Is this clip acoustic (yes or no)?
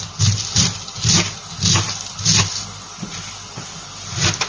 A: yes